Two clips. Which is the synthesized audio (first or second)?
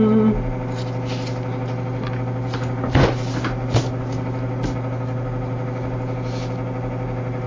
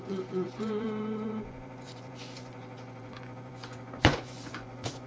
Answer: second